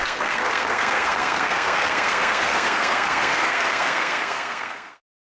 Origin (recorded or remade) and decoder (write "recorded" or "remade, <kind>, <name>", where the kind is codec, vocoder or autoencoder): remade, codec, SNAC